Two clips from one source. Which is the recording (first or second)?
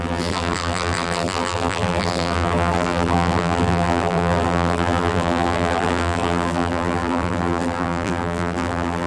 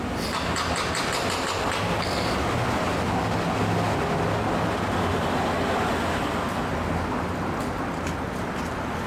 second